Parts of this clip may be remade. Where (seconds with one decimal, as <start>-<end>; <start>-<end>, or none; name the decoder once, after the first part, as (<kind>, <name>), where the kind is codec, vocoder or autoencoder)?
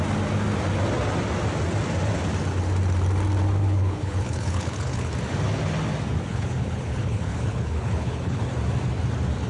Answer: 3.6-5.1 (codec, HILCodec); 6.3-8.4